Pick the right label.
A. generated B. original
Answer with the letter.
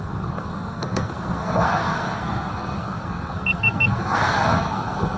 A